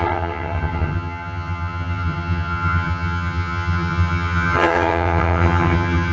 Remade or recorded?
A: remade